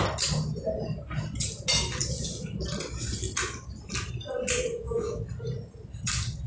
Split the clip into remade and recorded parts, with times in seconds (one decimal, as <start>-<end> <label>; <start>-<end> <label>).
0.0-4.7 recorded; 4.7-5.2 remade; 5.2-6.5 recorded